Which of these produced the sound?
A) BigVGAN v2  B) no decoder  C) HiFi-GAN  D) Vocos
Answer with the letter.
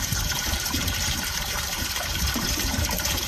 A